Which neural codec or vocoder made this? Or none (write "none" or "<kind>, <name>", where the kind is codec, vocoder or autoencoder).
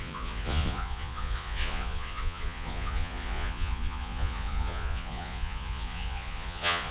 vocoder, Vocos